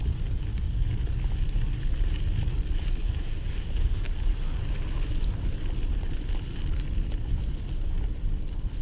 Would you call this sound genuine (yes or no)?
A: yes